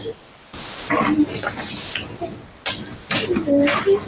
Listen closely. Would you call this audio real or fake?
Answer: real